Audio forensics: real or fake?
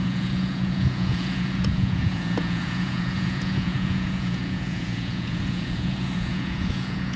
fake